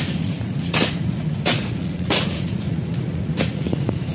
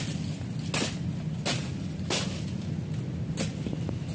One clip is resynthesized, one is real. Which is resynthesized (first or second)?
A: first